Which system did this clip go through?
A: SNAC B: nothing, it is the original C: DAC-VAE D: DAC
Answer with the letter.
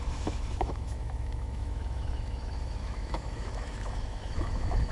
C